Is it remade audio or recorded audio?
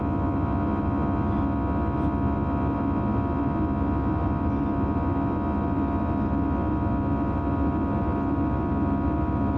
recorded